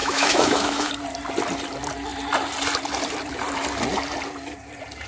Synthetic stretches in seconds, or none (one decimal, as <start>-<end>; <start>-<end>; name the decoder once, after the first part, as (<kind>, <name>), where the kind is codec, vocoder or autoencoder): 0.0-0.9 (autoencoder, DAC-VAE)